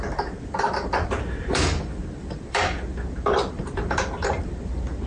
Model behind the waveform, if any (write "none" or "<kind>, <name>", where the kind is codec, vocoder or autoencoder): vocoder, BigVGAN v2